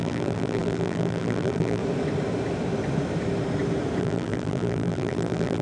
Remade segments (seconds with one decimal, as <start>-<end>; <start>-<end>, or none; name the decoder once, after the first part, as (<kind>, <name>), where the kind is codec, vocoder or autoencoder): 0.0-1.8 (vocoder, BigVGAN v2); 4.0-5.6